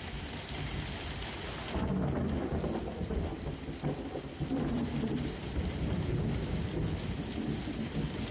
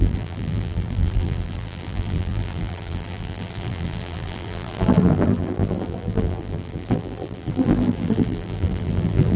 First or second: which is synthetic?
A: second